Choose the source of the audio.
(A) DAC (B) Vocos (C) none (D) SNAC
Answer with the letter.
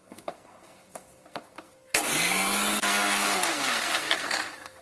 D